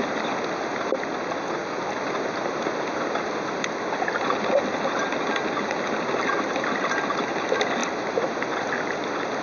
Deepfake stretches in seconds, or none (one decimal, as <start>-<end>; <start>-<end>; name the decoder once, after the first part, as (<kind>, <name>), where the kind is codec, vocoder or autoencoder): none